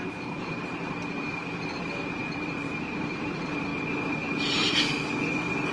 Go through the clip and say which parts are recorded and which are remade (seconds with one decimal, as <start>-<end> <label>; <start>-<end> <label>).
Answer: 0.0-3.7 remade; 3.7-4.3 recorded; 4.3-4.9 remade; 4.9-5.7 recorded